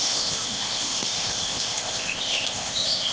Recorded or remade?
remade